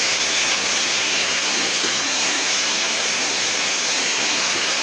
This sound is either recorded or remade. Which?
remade